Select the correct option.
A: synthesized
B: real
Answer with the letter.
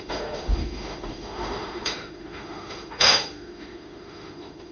A